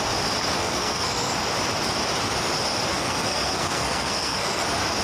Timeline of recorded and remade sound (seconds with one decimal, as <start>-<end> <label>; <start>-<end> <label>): 0.0-0.6 recorded; 0.6-1.3 remade; 1.3-2.9 recorded; 2.9-4.6 remade; 4.6-5.0 recorded